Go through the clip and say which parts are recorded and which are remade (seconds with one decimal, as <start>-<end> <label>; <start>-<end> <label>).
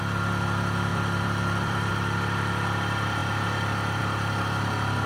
0.0-0.9 recorded; 0.9-1.9 remade; 1.9-5.1 recorded